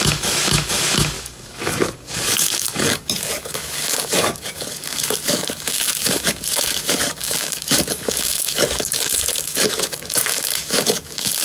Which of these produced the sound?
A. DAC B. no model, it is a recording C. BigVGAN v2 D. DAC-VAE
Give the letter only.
A